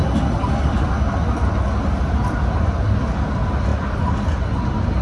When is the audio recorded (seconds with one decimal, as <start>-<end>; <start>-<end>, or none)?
0.0-5.0